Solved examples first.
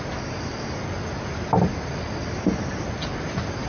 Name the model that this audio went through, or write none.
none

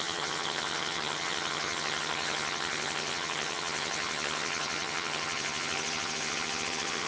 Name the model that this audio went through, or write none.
vocoder, HiFi-GAN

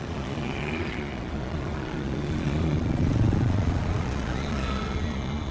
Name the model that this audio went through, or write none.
vocoder, Vocos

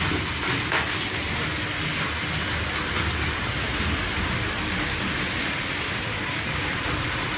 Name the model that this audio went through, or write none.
none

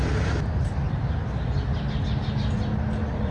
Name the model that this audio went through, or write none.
none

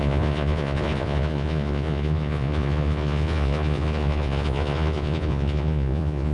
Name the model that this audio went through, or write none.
vocoder, Vocos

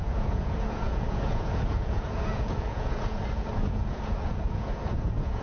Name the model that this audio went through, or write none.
vocoder, Vocos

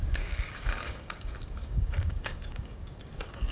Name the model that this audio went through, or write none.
codec, DAC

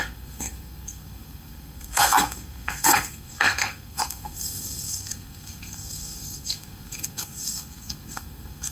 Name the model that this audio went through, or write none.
codec, SNAC